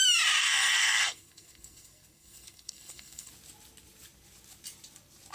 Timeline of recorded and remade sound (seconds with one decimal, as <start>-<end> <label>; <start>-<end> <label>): 0.0-0.4 recorded; 0.4-3.3 remade; 3.3-5.3 recorded